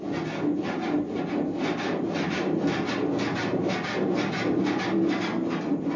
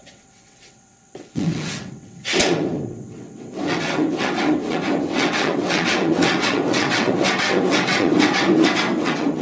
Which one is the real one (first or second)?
first